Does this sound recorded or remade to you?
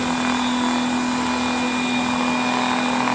recorded